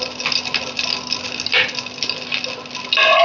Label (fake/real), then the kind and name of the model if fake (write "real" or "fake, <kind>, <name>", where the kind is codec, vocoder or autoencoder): real